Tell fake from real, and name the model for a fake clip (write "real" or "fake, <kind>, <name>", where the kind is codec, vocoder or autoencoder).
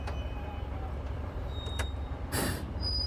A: fake, vocoder, BigVGAN v2